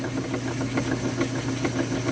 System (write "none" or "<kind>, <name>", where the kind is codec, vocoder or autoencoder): none